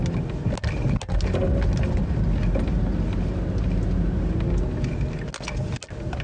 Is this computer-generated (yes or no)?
no